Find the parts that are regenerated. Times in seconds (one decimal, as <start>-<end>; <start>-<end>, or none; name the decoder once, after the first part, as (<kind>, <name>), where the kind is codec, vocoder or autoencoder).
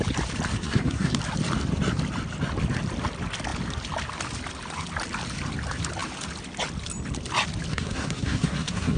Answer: 0.5-1.2 (codec, SNAC); 7.7-9.0